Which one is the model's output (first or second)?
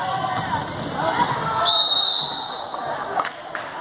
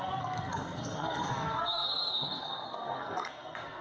second